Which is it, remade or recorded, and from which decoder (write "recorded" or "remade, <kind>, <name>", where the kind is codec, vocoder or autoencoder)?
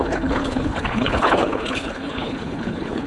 remade, codec, HILCodec